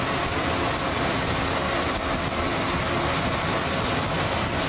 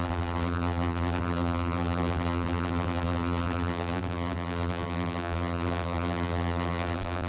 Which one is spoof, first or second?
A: second